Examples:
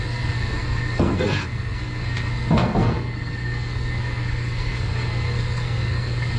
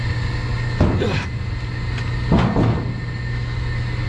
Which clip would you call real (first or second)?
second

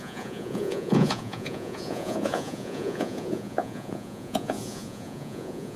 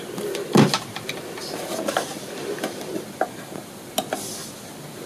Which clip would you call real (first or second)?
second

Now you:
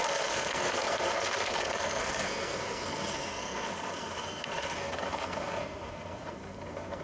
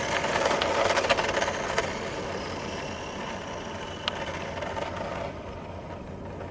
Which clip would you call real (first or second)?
second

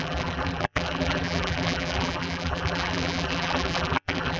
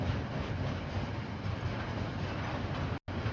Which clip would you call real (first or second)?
second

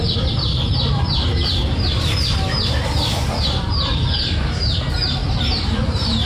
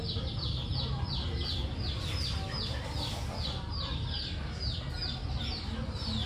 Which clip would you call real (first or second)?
second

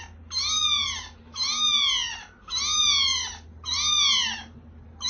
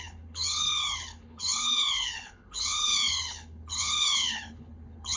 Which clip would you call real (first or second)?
first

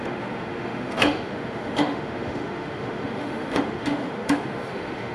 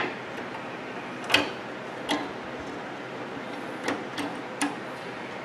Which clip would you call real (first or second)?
second